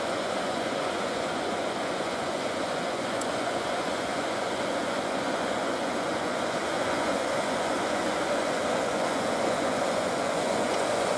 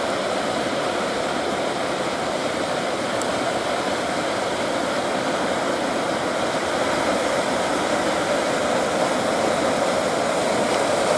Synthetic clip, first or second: first